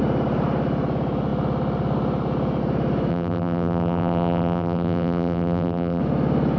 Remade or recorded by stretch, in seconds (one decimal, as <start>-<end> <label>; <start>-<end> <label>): 0.0-3.1 recorded; 3.1-6.0 remade; 6.0-6.6 recorded